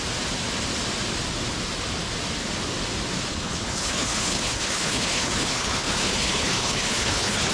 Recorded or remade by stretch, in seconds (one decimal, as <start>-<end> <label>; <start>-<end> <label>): 0.0-3.3 recorded; 3.3-7.5 remade